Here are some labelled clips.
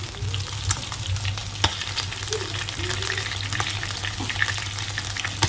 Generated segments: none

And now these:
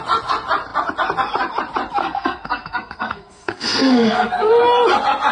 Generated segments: 2.0-4.5 (codec, SNAC)

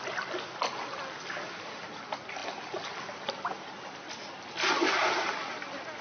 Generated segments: none

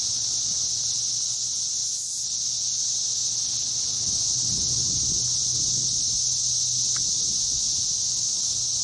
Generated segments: none

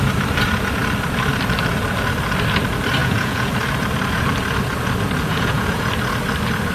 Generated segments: 3.0-3.5 (vocoder, Vocos); 5.3-5.9